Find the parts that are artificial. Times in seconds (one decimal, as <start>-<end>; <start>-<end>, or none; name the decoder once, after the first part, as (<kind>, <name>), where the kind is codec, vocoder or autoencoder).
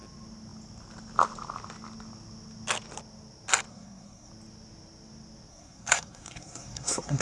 3.7-4.3 (codec, SNAC); 5.5-7.2